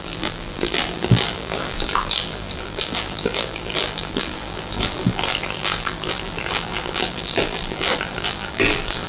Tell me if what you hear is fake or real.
fake